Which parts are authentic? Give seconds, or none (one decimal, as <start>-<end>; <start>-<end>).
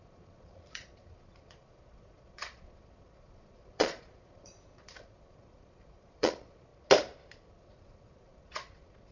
6.7-7.5